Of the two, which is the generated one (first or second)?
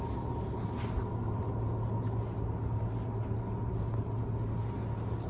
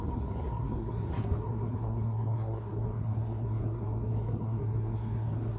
second